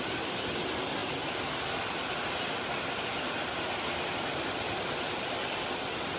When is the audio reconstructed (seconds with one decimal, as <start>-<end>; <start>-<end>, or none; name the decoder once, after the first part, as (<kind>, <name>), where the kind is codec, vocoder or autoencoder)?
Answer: none